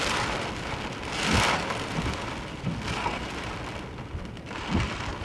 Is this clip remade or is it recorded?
recorded